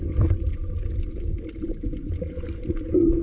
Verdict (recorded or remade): recorded